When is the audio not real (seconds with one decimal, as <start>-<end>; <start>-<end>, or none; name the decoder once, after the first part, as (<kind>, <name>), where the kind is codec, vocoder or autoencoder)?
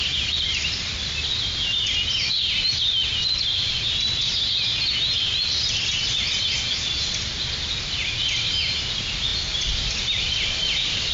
none